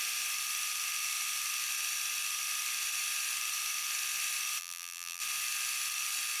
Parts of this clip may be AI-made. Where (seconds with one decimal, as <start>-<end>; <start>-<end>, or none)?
4.6-5.2